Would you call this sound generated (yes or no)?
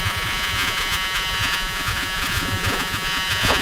yes